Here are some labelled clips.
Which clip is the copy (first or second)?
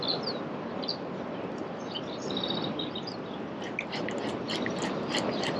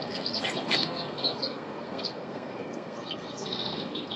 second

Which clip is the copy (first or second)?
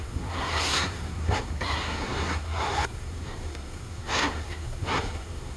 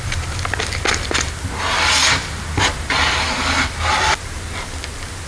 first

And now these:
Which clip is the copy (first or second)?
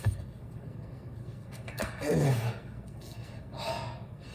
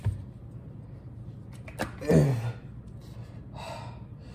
first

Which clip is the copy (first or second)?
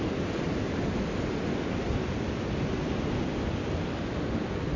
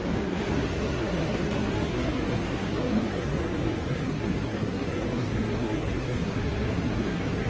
second